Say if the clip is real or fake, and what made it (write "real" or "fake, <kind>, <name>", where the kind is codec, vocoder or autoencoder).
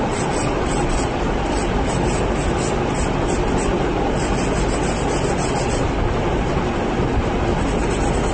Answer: real